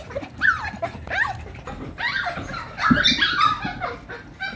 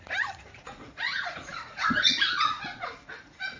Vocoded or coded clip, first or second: second